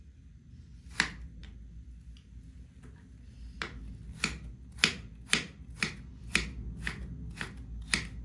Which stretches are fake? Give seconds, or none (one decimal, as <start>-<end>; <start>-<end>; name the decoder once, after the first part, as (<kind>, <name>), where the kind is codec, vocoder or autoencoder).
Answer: none